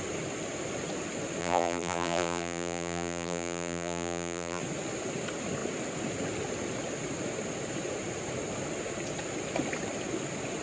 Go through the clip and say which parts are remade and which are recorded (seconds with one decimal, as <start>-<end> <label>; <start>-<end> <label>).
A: 0.0-1.4 recorded; 1.4-4.6 remade; 4.6-10.6 recorded